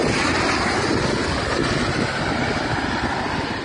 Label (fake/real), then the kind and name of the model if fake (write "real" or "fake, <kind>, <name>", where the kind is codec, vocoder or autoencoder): real